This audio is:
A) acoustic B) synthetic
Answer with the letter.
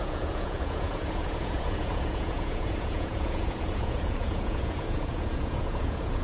B